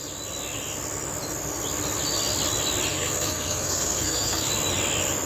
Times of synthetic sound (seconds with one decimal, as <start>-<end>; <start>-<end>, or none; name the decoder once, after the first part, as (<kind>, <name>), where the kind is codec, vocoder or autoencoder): 2.9-4.5 (codec, SNAC)